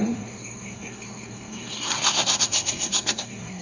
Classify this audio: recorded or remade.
remade